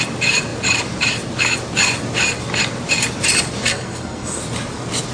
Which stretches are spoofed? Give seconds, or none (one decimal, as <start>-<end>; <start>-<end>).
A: 3.7-4.4

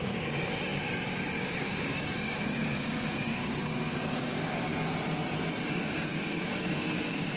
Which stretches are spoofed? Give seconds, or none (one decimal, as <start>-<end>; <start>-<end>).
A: 0.0-4.7; 5.6-7.4

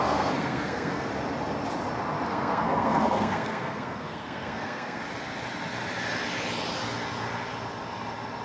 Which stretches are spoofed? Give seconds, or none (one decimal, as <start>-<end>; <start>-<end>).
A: 0.0-1.1; 2.3-5.0